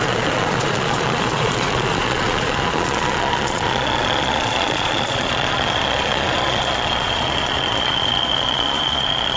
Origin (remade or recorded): remade